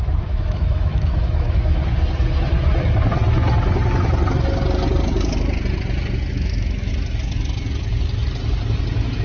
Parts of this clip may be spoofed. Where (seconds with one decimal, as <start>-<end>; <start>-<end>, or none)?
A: 0.0-1.8; 6.3-6.9